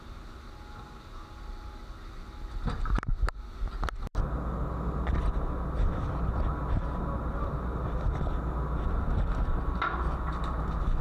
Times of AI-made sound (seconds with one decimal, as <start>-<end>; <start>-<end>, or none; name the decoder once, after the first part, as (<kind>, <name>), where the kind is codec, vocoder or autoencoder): none